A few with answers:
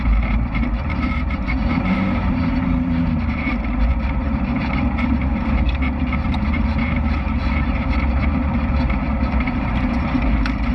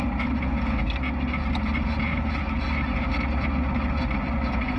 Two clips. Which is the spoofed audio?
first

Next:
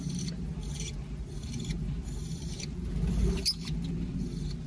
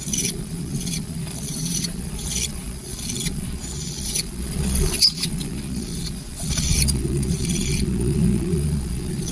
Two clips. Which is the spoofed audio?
second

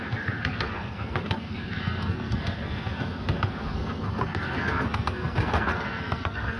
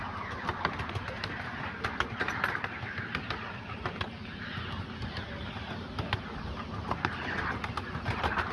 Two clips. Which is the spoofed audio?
first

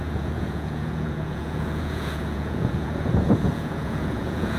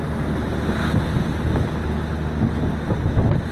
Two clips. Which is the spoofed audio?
first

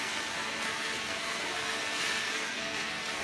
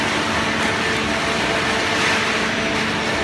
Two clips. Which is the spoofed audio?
first